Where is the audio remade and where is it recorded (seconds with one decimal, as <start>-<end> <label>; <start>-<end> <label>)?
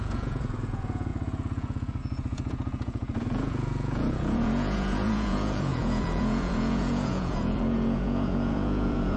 0.0-9.2 remade